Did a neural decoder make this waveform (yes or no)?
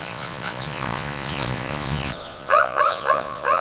yes